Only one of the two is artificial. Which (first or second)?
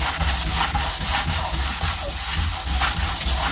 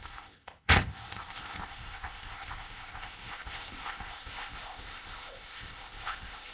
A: second